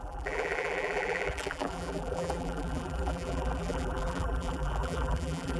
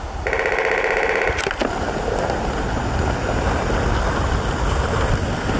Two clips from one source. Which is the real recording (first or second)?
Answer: second